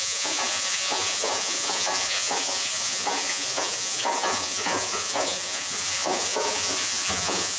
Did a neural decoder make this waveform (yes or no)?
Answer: yes